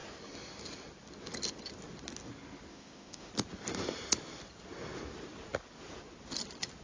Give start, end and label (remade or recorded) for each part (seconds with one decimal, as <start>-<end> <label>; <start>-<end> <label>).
0.0-2.7 recorded; 2.7-3.3 remade; 3.3-6.8 recorded

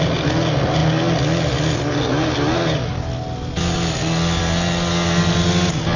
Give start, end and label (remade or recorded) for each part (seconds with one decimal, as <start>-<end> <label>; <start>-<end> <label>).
0.0-6.0 recorded

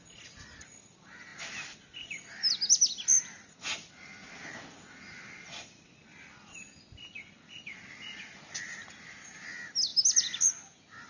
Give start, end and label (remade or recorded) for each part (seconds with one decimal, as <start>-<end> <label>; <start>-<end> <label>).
0.0-11.1 recorded

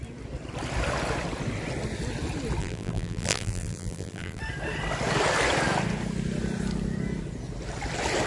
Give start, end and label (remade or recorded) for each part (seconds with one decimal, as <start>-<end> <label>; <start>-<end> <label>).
0.0-2.6 recorded; 2.6-4.4 remade; 4.4-8.3 recorded

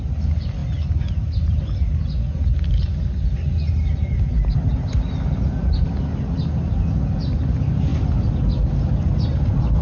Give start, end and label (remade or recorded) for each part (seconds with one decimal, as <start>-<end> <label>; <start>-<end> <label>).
0.0-9.8 recorded